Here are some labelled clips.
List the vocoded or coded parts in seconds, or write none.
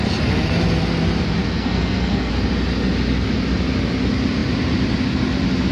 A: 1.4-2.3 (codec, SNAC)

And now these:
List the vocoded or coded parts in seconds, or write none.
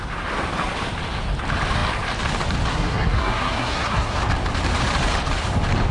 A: 2.7-4.2 (codec, SNAC)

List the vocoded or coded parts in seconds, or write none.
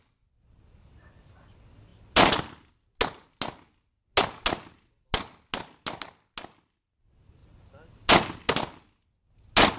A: none